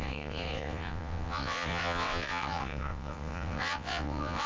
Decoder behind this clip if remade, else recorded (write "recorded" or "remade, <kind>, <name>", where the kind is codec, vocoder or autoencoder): remade, vocoder, WaveNeXt